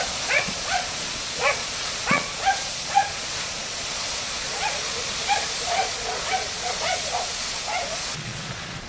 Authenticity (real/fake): fake